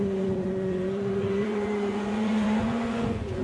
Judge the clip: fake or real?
fake